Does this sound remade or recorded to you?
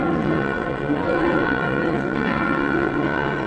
remade